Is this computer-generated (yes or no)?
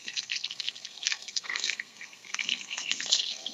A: yes